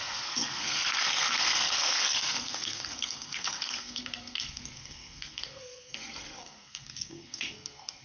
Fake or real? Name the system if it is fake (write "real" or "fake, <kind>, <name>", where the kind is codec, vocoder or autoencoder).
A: fake, codec, SNAC